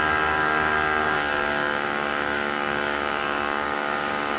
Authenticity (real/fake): fake